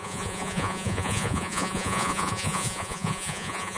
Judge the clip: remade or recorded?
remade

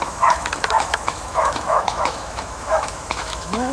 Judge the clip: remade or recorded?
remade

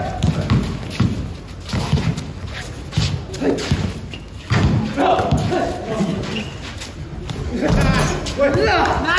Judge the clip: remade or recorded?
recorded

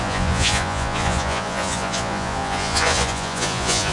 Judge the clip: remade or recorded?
remade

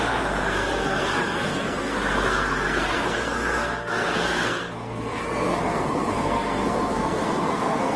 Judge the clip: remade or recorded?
remade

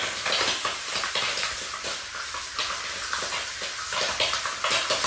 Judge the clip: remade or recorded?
remade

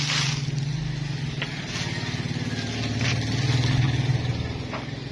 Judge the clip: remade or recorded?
recorded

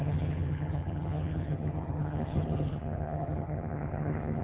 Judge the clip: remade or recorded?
remade